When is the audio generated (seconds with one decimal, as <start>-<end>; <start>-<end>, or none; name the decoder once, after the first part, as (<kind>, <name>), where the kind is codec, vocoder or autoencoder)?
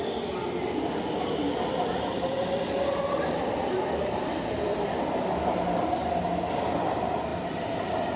1.4-4.9 (vocoder, BigVGAN v2); 7.3-8.2